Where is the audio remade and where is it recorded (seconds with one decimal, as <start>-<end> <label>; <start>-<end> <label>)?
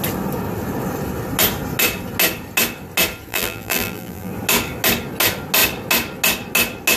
0.0-3.3 recorded; 3.3-4.3 remade; 4.3-7.0 recorded